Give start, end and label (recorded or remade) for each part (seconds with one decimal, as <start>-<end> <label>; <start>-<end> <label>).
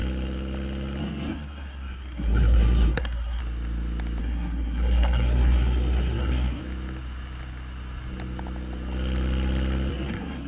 0.0-1.0 recorded; 1.0-3.4 remade; 3.4-4.2 recorded; 4.2-6.6 remade; 6.6-9.9 recorded; 9.9-10.5 remade